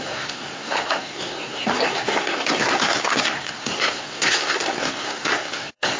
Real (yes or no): no